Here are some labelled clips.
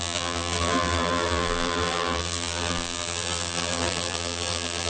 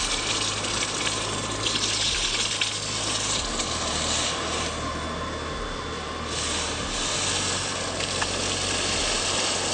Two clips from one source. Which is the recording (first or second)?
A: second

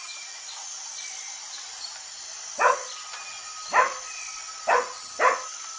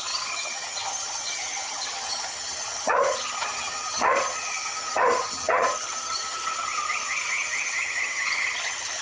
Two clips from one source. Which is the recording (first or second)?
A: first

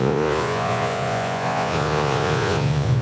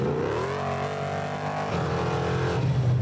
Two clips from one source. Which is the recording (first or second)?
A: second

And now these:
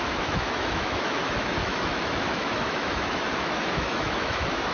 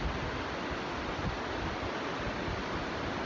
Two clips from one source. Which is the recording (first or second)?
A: second